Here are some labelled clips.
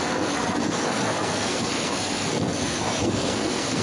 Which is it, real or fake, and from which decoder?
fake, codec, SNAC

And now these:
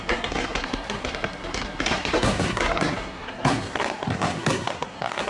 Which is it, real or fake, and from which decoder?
fake, codec, SNAC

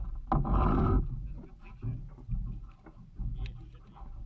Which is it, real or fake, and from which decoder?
real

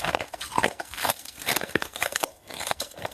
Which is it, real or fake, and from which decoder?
fake, codec, SNAC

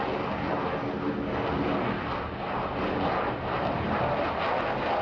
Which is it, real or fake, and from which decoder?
real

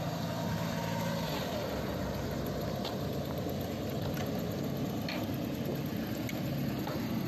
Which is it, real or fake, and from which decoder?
real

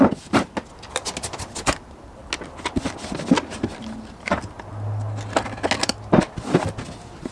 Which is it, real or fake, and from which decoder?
real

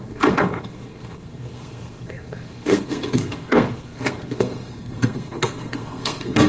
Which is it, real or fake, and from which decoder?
fake, codec, SNAC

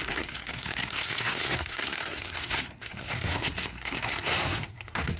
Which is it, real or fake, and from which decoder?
fake, codec, SNAC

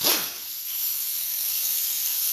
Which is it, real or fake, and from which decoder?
fake, codec, SNAC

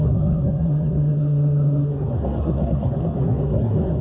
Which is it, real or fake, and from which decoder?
fake, codec, SNAC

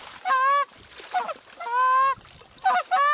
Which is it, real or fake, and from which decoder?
real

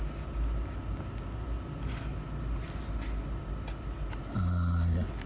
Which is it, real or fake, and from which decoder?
real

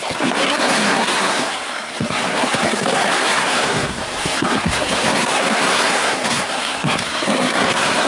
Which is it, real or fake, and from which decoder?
fake, codec, SNAC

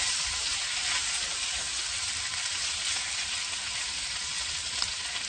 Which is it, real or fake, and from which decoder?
real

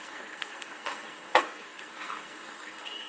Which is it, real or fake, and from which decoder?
fake, codec, SNAC